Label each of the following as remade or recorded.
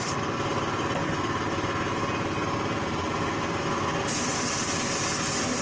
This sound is recorded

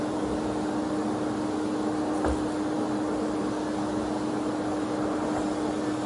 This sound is recorded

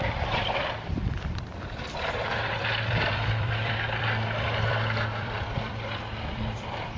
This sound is remade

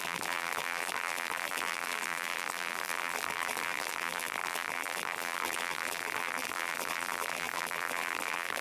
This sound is remade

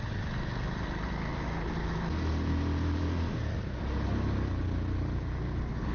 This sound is recorded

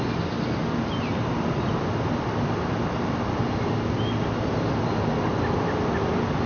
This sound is recorded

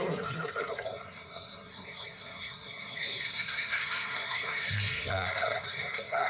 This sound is remade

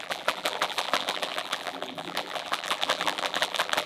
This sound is remade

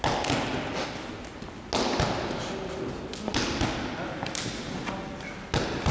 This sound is recorded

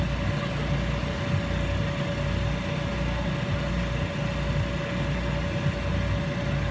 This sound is recorded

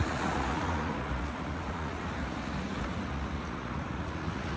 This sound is remade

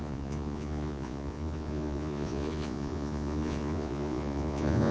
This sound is remade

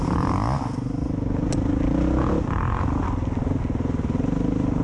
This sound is recorded